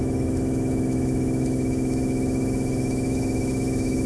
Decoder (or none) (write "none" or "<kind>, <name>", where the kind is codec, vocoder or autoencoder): autoencoder, DAC-VAE